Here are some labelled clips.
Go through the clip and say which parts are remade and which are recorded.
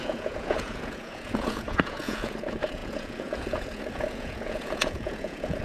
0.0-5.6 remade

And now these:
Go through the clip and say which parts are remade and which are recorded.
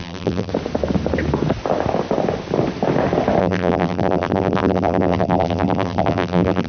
0.0-0.5 remade; 0.5-3.4 recorded; 3.4-6.7 remade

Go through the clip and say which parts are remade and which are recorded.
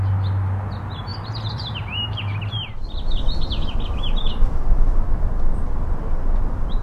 0.0-1.1 recorded; 1.1-2.5 remade; 2.5-6.8 recorded